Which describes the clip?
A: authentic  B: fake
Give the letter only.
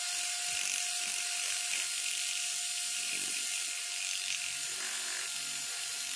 A